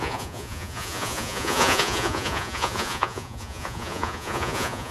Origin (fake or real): fake